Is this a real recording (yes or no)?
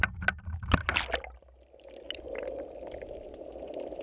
yes